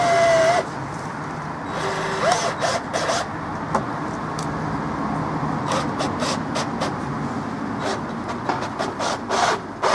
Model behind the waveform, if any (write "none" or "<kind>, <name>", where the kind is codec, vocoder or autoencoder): none